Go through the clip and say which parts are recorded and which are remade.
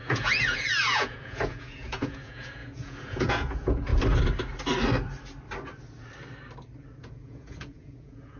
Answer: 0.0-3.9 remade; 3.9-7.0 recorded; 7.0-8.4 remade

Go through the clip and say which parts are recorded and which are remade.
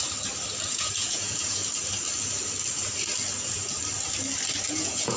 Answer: 0.0-0.7 recorded; 0.7-1.6 remade; 1.6-4.7 recorded; 4.7-5.2 remade